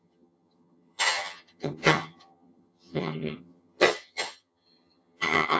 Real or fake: fake